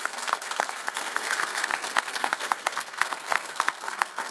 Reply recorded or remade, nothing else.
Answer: remade